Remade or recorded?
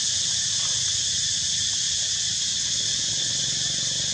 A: recorded